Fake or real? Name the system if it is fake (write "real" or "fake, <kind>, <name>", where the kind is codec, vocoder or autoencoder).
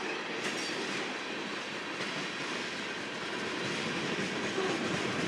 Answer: real